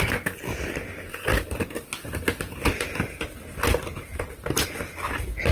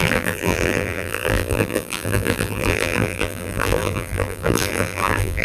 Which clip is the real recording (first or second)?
first